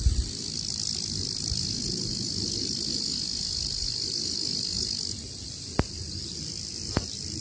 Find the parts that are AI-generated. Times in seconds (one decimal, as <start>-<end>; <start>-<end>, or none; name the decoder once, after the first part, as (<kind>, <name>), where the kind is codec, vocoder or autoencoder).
1.6-5.0 (vocoder, Vocos)